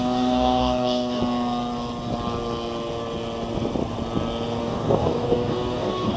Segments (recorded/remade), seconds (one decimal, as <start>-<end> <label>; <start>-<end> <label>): 0.0-1.2 remade; 1.2-4.6 recorded; 4.6-6.2 remade